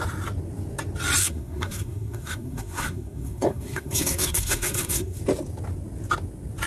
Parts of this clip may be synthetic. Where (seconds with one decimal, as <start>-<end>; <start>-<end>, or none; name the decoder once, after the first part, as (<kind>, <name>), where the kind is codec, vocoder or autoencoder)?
1.2-5.2 (codec, SNAC)